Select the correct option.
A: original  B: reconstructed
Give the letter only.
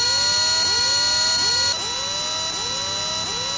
A